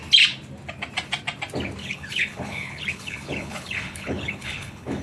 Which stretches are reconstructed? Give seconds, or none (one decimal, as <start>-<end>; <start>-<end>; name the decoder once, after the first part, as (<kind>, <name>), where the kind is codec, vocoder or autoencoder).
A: 1.8-5.0 (codec, HILCodec)